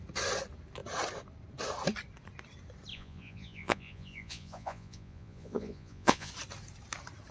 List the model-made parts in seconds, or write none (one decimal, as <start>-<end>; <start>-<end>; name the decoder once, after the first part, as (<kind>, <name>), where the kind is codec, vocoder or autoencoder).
2.9-6.3 (vocoder, Vocos)